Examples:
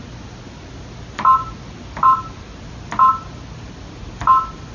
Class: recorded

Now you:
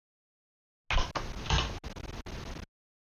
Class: recorded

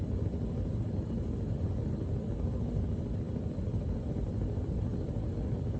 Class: recorded